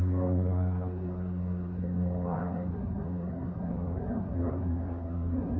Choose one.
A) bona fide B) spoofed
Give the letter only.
B